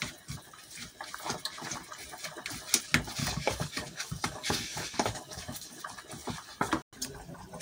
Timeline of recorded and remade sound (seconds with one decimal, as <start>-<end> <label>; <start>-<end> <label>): 0.0-3.2 recorded; 3.2-5.8 remade; 5.8-7.6 recorded